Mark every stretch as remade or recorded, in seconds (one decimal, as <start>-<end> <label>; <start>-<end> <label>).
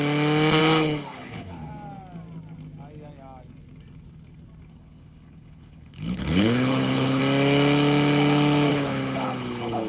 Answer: 0.0-0.6 recorded; 0.6-1.7 remade; 1.7-4.7 recorded; 4.7-7.2 remade; 7.2-8.7 recorded; 8.7-9.9 remade